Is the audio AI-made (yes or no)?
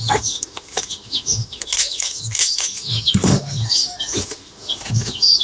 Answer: yes